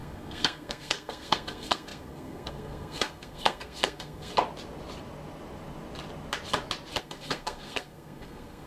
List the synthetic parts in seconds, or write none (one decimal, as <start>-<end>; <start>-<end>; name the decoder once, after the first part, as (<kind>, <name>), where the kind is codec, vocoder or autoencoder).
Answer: 0.0-4.3 (codec, SNAC); 7.0-8.7